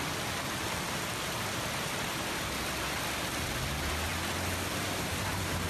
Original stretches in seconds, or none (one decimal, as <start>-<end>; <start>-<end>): 0.0-5.7

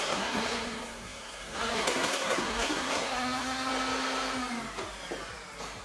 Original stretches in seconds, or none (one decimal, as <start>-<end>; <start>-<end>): 3.7-5.8

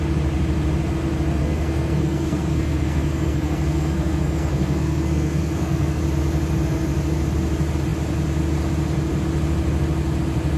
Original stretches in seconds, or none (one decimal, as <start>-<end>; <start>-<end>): 0.0-1.4; 6.0-10.6

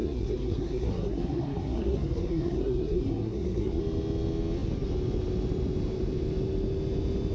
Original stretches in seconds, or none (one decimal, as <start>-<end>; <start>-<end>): 3.8-7.3

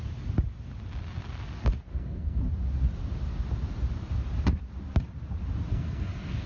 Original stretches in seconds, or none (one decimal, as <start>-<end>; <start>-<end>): 0.0-1.9; 2.4-5.7

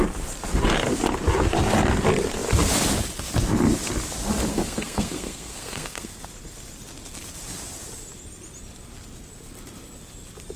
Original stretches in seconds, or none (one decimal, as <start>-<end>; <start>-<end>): 0.0-4.5; 6.1-10.6

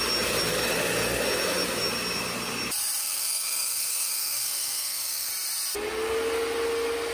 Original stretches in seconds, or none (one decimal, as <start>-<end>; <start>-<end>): 0.0-3.0; 5.3-7.1

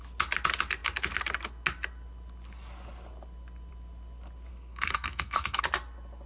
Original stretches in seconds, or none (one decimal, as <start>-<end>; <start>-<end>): 0.0-4.5; 5.6-6.3